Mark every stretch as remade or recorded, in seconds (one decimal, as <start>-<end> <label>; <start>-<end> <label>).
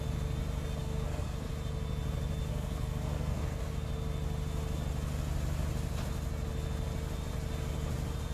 0.0-0.8 recorded; 0.8-1.5 remade; 1.5-2.5 recorded; 2.5-3.6 remade; 3.6-8.3 recorded